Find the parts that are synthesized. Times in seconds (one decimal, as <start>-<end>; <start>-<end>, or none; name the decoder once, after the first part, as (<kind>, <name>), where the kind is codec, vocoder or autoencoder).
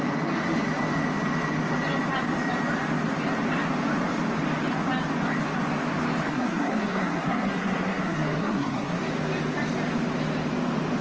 6.3-9.0 (codec, SNAC)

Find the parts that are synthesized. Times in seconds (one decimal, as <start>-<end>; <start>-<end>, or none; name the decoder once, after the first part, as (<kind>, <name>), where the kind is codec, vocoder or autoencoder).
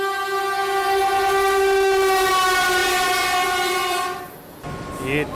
2.8-4.2 (vocoder, BigVGAN v2)